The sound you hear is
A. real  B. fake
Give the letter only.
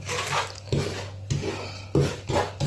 A